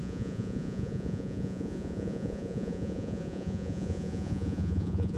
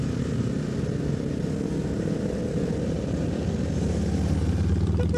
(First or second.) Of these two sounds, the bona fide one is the second